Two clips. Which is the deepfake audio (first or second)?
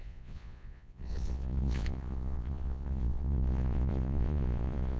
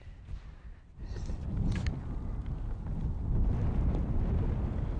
first